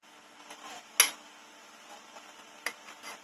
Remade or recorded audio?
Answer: recorded